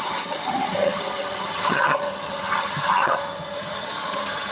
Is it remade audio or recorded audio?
remade